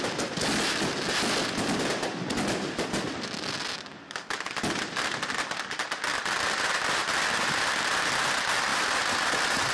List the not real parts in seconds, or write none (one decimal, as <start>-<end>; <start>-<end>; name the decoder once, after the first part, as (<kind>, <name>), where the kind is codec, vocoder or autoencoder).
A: none